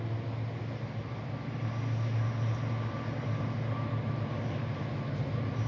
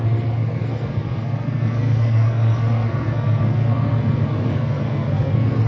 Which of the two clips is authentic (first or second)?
first